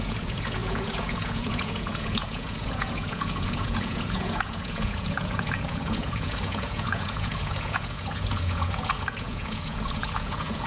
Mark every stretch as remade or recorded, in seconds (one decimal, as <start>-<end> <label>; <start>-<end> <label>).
0.0-10.7 remade